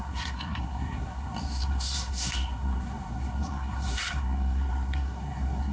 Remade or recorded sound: remade